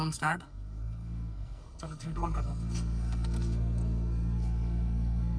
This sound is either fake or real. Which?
fake